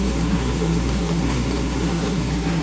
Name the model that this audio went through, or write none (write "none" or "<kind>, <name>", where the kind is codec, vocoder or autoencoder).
codec, SNAC